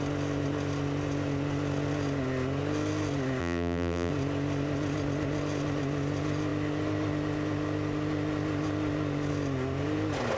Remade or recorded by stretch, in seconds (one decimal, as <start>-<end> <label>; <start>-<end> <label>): 0.0-3.4 recorded; 3.4-4.1 remade; 4.1-10.4 recorded